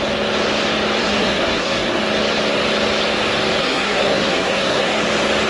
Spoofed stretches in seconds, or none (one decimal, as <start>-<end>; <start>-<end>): 1.0-2.0; 3.6-5.0